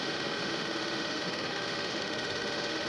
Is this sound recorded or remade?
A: remade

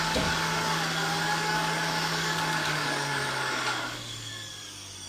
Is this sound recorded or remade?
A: remade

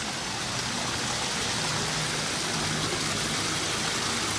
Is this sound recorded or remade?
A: recorded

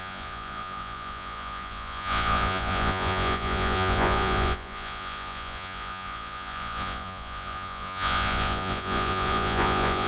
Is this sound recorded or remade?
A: remade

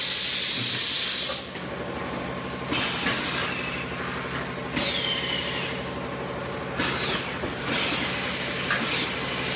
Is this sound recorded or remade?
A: recorded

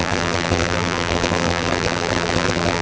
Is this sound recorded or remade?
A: remade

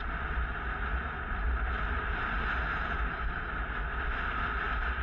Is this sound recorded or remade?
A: recorded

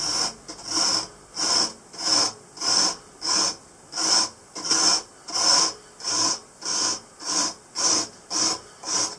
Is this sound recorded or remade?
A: recorded